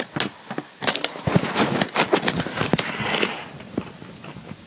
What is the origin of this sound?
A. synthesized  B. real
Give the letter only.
B